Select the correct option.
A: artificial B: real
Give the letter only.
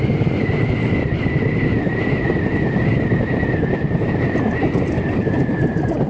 B